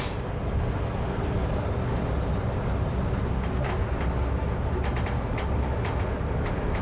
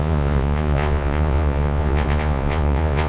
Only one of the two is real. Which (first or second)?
first